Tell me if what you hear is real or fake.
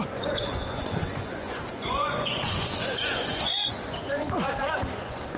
fake